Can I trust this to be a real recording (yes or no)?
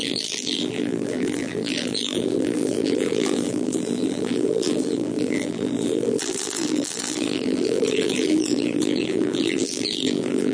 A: no